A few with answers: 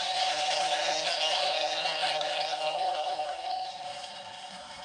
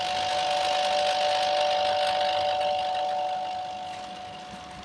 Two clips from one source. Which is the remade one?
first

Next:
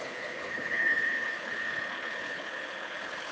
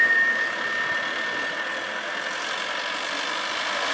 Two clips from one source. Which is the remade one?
first